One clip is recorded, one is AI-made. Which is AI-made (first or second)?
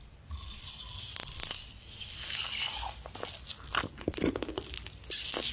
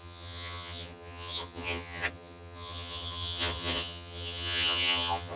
second